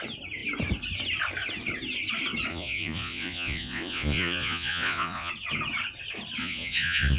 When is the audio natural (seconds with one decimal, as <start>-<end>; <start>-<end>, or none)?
0.0-2.5; 5.3-6.4